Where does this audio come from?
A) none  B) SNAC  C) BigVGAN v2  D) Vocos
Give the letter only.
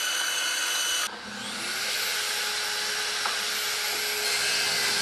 A